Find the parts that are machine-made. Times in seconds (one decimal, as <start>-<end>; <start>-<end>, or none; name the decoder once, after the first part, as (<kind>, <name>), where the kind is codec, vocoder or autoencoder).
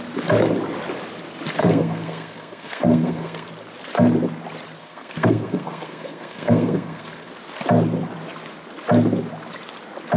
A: 1.6-3.5 (codec, SNAC); 4.8-7.3